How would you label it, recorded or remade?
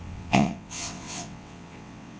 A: remade